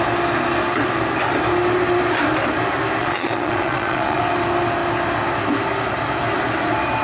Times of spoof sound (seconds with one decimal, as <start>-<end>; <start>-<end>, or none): 3.0-4.2